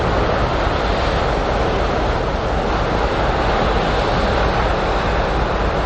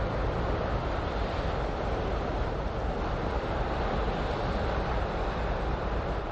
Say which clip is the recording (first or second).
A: first